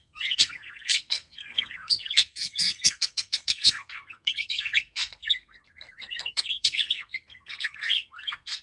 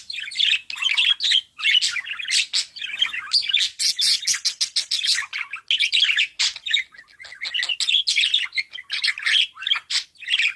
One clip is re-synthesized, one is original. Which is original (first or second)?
second